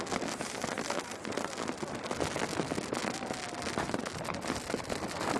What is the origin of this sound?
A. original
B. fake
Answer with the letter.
A